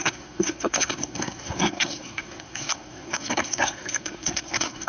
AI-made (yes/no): yes